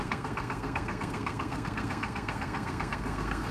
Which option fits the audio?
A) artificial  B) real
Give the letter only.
A